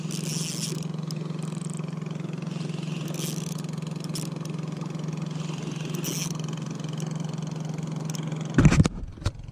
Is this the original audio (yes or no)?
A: yes